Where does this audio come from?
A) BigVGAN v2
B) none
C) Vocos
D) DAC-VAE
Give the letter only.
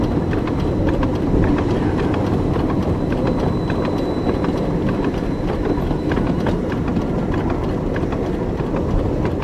B